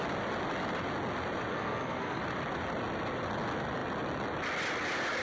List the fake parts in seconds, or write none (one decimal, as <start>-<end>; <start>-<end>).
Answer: 1.5-2.2